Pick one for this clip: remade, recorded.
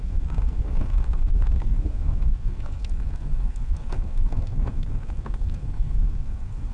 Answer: remade